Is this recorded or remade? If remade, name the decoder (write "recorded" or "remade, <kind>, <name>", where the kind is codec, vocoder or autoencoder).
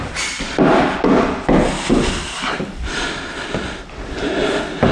recorded